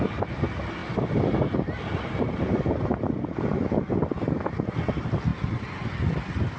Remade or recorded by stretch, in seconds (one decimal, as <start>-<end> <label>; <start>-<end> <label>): 0.0-6.6 recorded